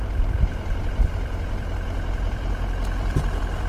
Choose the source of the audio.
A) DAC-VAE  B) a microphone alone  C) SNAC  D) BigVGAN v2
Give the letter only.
D